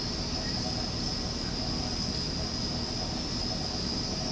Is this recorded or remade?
recorded